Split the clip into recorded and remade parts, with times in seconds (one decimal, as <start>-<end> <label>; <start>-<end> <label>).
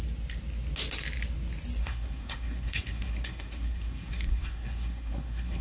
0.0-1.8 recorded; 1.8-5.6 remade